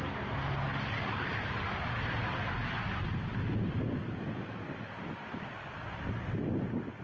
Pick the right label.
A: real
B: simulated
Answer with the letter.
A